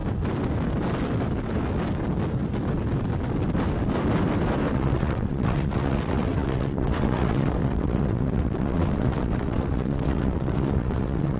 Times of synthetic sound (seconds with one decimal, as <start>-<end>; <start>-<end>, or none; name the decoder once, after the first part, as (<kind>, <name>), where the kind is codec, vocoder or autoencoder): 4.7-11.4 (vocoder, WaveNeXt)